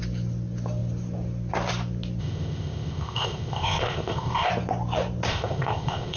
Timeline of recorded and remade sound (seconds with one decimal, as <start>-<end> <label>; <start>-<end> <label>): 0.0-2.2 recorded; 2.2-4.5 remade; 4.5-5.3 recorded; 5.3-6.2 remade